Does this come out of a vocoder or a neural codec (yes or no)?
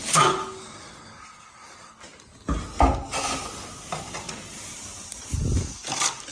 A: no